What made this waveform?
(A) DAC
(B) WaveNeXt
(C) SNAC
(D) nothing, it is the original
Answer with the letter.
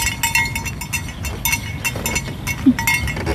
D